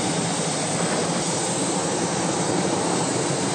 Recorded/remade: remade